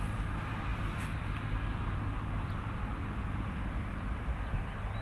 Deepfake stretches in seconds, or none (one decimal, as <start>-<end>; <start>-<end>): none